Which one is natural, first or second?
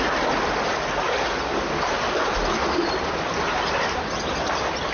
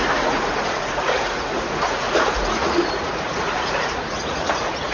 first